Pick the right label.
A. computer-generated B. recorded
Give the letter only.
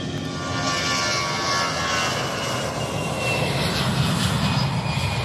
B